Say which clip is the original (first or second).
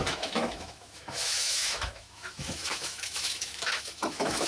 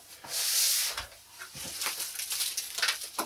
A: second